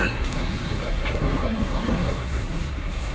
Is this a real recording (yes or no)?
no